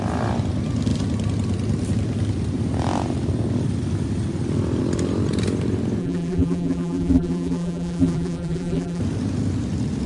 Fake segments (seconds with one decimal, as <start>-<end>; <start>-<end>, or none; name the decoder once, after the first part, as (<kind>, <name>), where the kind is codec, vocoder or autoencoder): 6.0-9.0 (vocoder, BigVGAN v2)